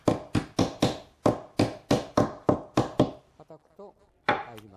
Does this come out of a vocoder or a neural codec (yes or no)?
no